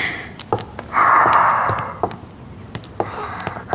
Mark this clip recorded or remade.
recorded